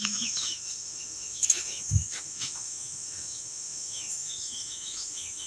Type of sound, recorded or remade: remade